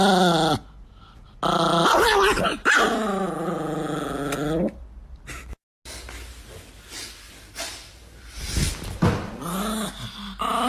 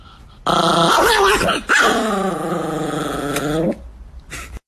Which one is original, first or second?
first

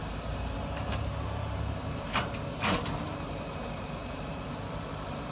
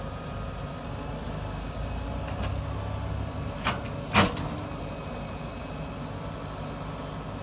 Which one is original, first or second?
second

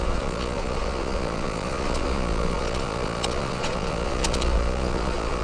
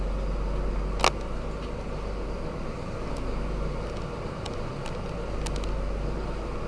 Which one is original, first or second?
second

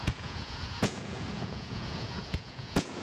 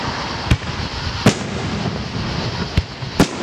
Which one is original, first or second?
second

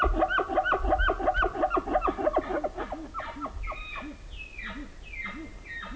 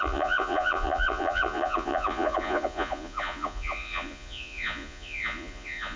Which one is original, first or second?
first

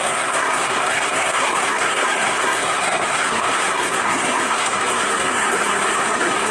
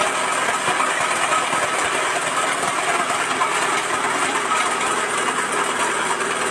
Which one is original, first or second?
second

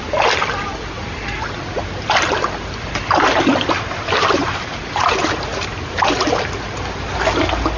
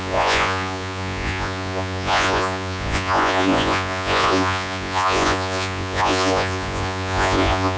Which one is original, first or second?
first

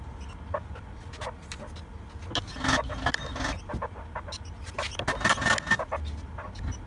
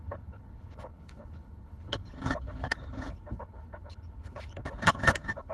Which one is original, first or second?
first